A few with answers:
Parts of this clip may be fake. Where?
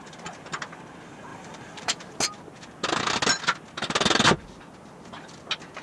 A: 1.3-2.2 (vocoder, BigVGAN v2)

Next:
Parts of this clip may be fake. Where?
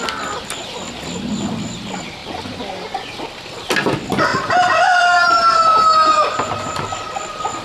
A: 2.2-2.7 (vocoder, BigVGAN v2); 4.3-5.3; 5.7-6.8